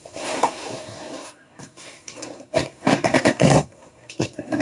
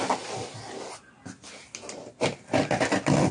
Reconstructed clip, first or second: first